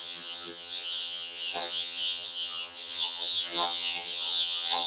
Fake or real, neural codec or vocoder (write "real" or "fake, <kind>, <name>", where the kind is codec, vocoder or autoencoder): fake, vocoder, HiFi-GAN